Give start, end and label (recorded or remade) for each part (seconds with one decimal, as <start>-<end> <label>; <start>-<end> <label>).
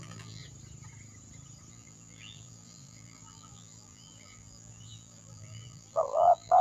0.0-0.4 remade; 0.4-1.7 recorded; 1.7-6.6 remade